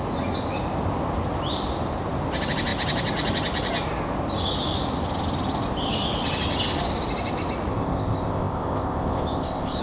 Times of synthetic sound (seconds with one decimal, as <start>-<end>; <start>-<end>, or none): 7.7-9.8